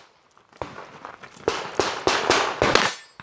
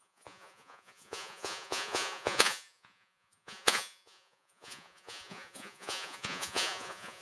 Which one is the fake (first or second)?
second